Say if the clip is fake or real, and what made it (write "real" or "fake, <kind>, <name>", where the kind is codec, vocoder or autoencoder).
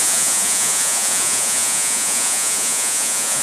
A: fake, vocoder, Vocos